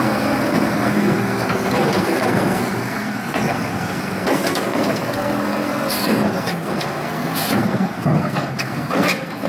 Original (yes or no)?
no